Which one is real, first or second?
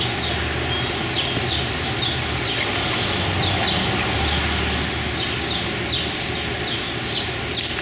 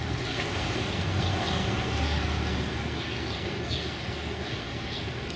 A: first